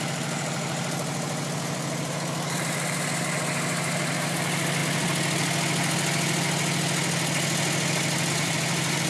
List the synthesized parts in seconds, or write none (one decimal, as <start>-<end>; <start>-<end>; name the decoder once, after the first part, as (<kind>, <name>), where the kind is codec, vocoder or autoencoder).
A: 0.0-4.8 (vocoder, BigVGAN v2); 8.3-9.1